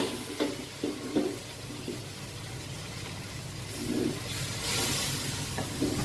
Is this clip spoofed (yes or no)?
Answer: no